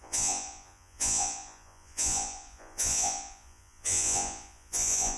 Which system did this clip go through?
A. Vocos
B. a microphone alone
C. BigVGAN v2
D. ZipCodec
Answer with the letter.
A